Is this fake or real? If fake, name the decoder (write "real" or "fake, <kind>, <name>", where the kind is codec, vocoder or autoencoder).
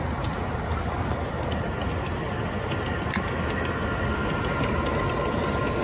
real